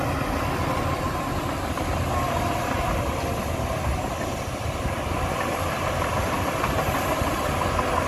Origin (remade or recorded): recorded